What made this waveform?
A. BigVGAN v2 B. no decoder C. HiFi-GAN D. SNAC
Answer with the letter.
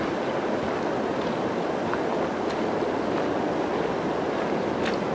B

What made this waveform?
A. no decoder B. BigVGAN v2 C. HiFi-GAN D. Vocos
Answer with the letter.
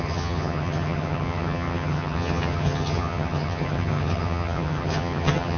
C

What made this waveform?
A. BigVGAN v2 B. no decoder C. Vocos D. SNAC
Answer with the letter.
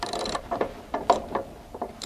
B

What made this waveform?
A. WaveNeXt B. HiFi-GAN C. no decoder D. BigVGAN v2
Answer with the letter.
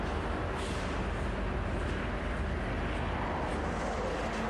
C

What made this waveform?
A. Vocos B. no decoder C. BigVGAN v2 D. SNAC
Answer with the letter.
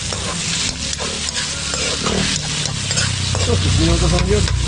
B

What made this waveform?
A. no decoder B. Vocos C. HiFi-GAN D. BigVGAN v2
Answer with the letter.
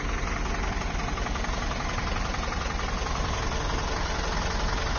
A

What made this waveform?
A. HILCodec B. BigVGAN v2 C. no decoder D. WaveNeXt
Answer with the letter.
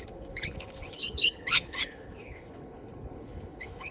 A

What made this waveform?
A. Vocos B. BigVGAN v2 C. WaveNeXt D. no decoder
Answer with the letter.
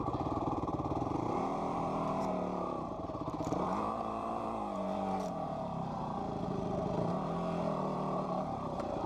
B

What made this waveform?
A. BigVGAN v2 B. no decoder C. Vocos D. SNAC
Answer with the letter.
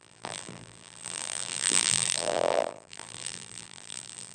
A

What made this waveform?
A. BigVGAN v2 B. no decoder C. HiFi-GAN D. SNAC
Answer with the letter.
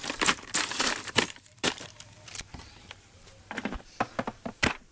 A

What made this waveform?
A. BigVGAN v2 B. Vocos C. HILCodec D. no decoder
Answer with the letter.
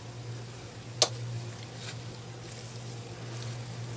D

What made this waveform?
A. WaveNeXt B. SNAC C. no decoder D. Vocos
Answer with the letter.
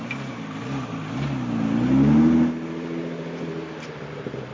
C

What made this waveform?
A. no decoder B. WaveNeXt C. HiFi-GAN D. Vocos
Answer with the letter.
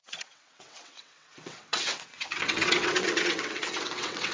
B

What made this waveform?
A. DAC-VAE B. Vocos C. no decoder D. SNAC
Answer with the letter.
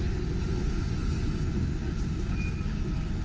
C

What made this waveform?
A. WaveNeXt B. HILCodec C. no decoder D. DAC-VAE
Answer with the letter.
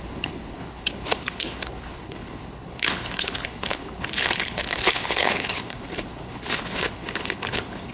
B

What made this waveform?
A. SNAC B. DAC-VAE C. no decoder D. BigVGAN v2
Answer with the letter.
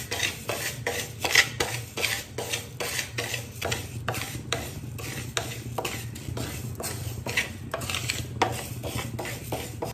C